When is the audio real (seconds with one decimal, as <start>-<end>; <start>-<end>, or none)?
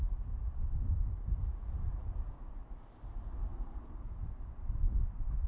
0.0-3.5; 4.7-5.5